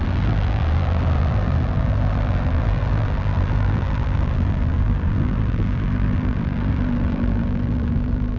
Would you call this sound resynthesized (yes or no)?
yes